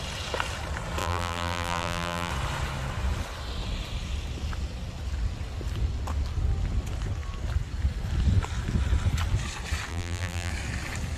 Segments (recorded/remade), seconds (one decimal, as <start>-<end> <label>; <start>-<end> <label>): 0.0-1.0 recorded; 1.0-2.3 remade; 2.3-9.9 recorded; 9.9-10.5 remade; 10.5-11.2 recorded